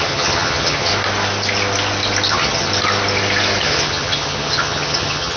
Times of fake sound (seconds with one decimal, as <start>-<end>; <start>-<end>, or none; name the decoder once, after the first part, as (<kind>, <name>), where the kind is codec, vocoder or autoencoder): 0.0-0.9 (vocoder, HiFi-GAN); 2.3-2.7; 3.6-5.4